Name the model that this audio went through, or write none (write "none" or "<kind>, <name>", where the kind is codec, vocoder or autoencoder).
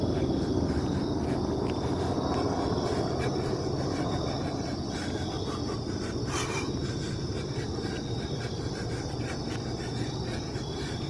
none